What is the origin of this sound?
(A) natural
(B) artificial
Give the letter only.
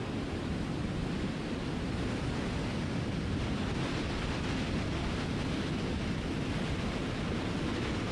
A